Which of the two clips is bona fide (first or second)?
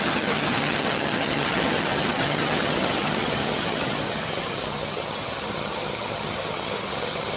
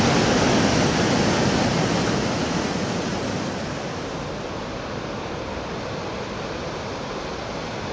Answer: second